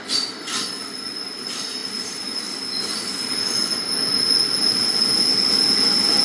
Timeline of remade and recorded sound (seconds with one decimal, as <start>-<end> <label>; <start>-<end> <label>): 0.0-6.2 recorded